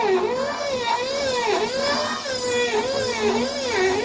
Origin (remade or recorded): recorded